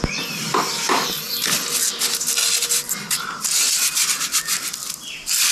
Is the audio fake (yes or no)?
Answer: no